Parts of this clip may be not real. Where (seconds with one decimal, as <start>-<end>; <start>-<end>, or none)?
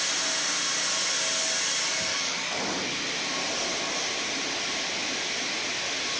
2.1-2.6